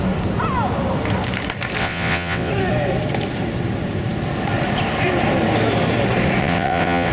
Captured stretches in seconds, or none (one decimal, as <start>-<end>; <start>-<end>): 0.0-1.8; 2.5-6.4

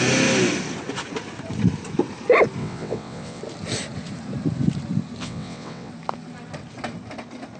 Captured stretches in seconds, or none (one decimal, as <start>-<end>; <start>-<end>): 0.0-2.6; 3.4-5.2; 5.9-7.6

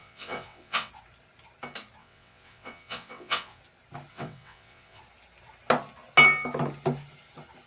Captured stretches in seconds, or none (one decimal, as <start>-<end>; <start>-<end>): 0.9-2.0; 3.6-4.1; 5.0-7.7

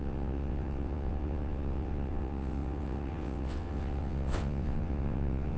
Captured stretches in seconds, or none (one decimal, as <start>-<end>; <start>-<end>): none

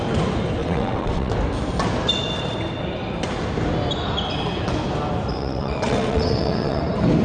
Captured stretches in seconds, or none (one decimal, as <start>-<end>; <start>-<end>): 0.0-0.6; 1.3-5.3; 6.8-7.2

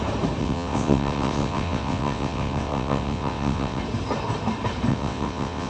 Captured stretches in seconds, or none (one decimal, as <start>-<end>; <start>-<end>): 0.0-0.4; 3.8-4.9

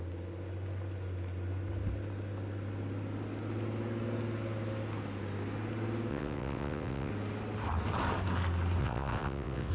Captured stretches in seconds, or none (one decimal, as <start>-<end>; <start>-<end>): 0.0-6.1; 7.1-8.8

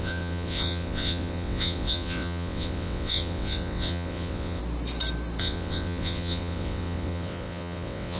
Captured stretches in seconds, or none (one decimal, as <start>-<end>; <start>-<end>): 4.6-5.4